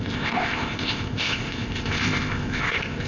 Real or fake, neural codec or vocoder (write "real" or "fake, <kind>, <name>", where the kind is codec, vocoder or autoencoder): fake, codec, ZipCodec